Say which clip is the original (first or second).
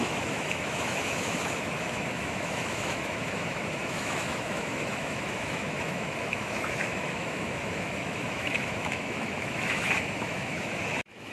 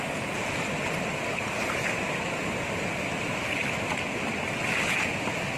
second